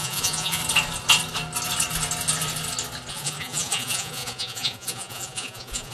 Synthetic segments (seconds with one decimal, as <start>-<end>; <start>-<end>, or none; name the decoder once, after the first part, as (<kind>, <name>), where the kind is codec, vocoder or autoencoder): 0.0-0.6 (vocoder, Vocos); 3.1-5.9

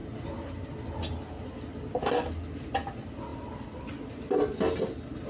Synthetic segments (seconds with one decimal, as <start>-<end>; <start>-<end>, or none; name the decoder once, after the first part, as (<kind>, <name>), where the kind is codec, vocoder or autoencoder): none

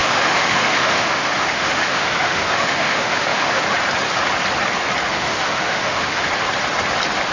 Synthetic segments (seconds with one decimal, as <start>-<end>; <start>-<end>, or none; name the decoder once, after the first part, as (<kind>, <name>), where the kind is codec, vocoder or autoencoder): 0.0-3.6 (autoencoder, DAC-VAE); 5.1-6.3